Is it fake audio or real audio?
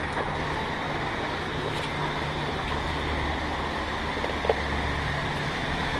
real